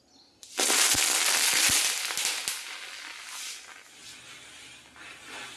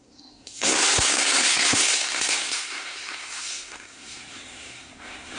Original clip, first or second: first